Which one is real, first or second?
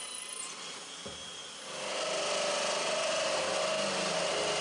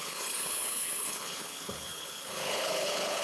first